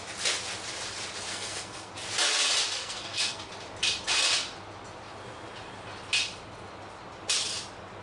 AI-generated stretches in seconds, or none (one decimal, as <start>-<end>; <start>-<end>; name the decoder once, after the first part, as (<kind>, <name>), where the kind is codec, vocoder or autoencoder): 1.3-1.9 (codec, SNAC); 2.8-3.5